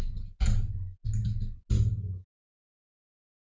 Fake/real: real